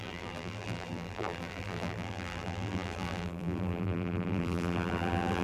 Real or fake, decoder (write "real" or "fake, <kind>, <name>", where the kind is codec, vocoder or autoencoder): fake, vocoder, BigVGAN v2